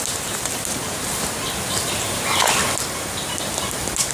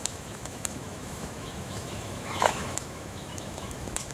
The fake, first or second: second